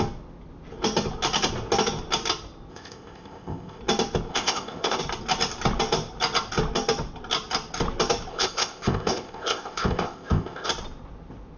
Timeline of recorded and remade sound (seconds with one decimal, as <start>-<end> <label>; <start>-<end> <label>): 0.0-2.7 recorded; 2.7-3.8 remade; 3.8-4.3 recorded; 4.3-5.0 remade; 5.0-8.3 recorded; 8.3-10.7 remade; 10.7-11.6 recorded